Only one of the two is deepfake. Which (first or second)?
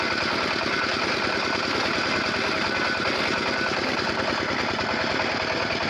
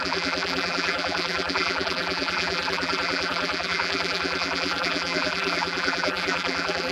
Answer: second